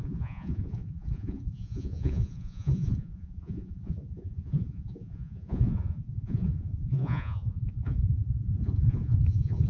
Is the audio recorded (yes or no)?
no